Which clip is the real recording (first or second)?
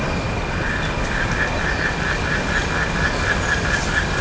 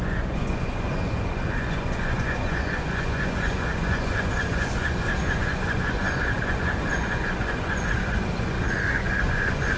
first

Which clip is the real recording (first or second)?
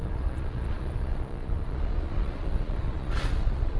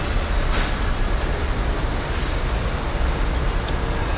second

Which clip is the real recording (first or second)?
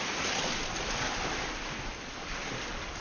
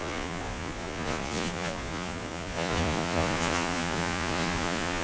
first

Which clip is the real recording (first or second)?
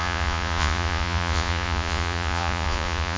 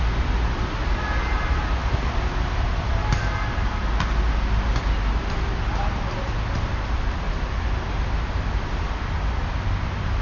second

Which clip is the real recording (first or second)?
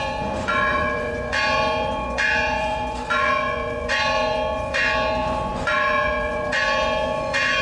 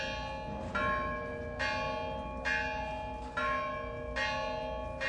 second